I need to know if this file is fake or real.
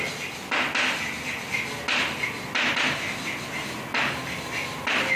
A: real